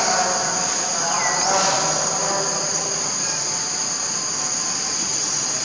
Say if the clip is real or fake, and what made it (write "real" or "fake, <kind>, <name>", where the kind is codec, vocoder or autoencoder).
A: real